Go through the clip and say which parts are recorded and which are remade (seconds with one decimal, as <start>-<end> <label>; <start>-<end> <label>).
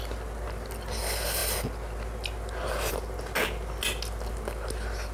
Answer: 0.0-5.1 recorded